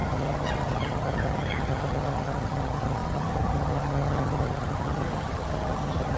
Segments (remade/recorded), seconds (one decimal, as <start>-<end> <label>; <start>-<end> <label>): 0.0-6.2 remade

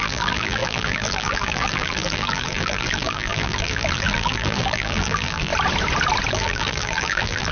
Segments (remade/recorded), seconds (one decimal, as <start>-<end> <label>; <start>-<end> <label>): 0.0-5.5 remade; 5.5-6.3 recorded; 6.3-7.5 remade

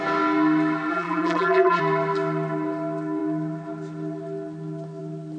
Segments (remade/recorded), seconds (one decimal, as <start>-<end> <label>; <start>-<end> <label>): 0.0-0.9 recorded; 0.9-1.8 remade; 1.8-5.4 recorded

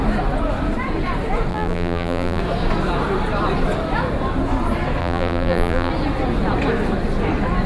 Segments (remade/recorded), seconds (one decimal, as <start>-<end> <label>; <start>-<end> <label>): 0.0-1.5 recorded; 1.5-2.4 remade; 2.4-5.0 recorded; 5.0-5.9 remade; 5.9-7.7 recorded

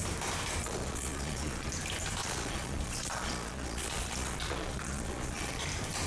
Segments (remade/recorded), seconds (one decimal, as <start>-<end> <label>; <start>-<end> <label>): 0.0-0.6 recorded; 0.6-1.7 remade; 1.7-2.2 recorded; 2.2-5.6 remade; 5.6-6.1 recorded

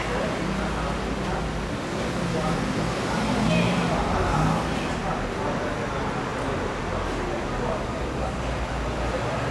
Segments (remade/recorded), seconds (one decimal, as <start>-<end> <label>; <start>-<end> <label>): 0.0-6.3 recorded; 6.3-6.8 remade; 6.8-9.5 recorded